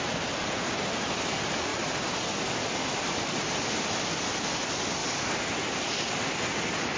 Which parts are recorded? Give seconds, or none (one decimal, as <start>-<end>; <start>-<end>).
0.0-7.0